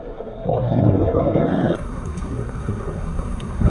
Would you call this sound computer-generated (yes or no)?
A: yes